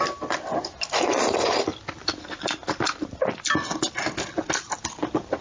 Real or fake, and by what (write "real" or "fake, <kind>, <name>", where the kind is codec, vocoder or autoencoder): fake, vocoder, BigVGAN v2